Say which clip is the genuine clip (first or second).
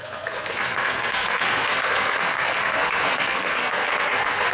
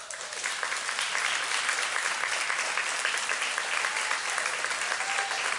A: second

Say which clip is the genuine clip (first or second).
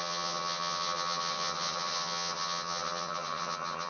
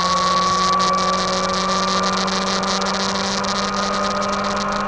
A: second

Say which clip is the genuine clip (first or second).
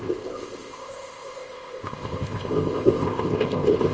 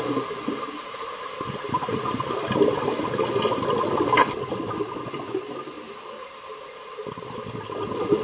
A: second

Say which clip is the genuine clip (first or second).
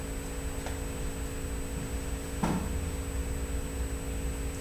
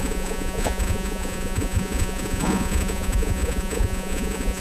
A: first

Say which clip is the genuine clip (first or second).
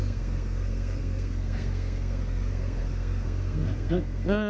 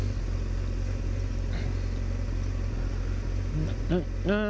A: second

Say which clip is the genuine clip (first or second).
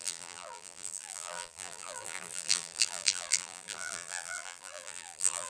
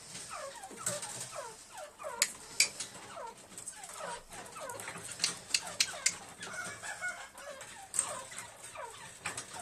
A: second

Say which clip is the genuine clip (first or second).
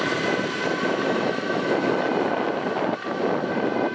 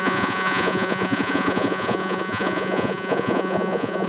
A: first